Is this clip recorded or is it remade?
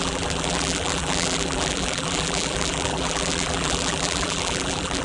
remade